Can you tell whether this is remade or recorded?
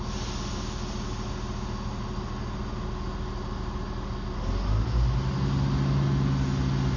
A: recorded